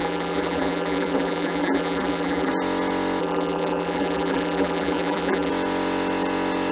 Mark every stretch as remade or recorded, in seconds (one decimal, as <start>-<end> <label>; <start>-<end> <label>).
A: 0.0-2.5 remade; 2.5-3.2 recorded; 3.2-5.5 remade; 5.5-6.7 recorded